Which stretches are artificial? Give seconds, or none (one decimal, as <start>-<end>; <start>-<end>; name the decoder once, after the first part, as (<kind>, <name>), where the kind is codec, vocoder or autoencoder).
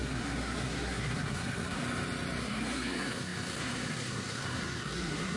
0.0-1.8 (codec, SNAC); 2.4-5.4